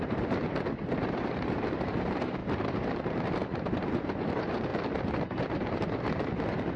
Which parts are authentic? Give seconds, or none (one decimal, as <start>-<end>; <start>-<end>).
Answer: none